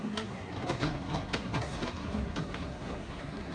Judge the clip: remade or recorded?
remade